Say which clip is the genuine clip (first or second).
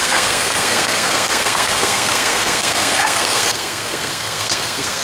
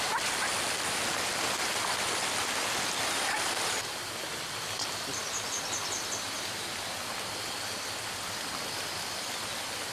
second